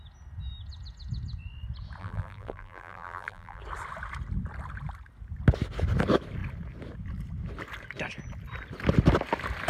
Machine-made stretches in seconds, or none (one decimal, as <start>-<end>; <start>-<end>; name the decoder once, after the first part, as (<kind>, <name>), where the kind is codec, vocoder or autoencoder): 2.0-3.6 (vocoder, BigVGAN v2)